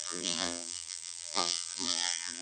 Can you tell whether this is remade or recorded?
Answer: remade